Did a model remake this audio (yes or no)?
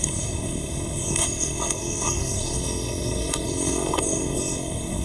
yes